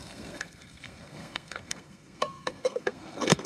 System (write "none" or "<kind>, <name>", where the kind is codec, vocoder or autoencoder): codec, SNAC